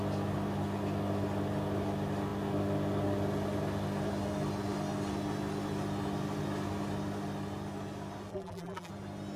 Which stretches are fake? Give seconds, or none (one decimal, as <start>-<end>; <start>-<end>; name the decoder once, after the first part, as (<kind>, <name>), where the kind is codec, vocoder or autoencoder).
8.3-8.9 (vocoder, BigVGAN v2)